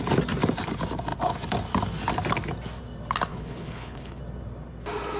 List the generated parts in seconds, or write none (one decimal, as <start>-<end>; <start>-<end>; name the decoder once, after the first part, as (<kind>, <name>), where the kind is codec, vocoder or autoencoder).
3.3-4.2 (codec, HILCodec)